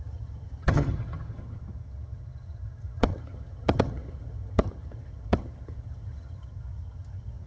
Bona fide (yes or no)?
no